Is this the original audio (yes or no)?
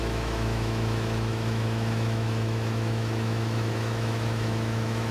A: no